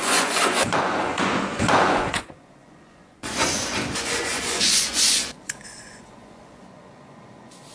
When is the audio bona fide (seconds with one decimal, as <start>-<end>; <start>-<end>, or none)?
none